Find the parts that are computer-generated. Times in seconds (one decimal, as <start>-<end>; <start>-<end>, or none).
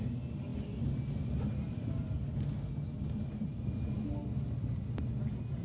none